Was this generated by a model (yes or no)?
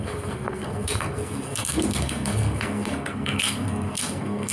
yes